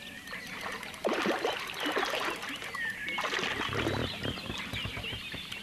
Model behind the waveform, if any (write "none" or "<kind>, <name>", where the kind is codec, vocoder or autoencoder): none